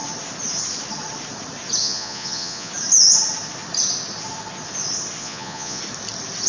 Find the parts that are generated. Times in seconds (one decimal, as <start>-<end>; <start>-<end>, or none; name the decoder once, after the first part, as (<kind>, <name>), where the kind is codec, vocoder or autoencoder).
1.8-2.7 (vocoder, Vocos); 5.2-5.8